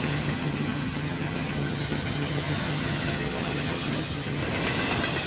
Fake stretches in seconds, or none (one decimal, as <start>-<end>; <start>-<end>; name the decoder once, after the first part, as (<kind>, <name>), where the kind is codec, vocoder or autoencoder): 0.0-4.4 (vocoder, HiFi-GAN)